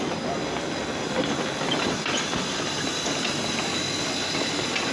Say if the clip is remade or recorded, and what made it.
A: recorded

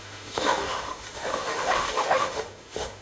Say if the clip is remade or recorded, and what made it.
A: remade, autoencoder, DAC-VAE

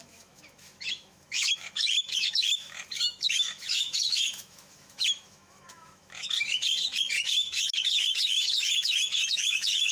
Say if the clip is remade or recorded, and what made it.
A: remade, autoencoder, DAC-VAE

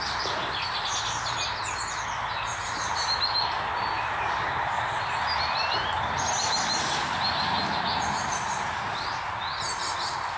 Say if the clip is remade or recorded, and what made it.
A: recorded